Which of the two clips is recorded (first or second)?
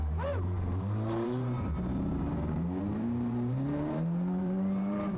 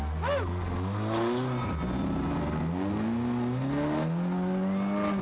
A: second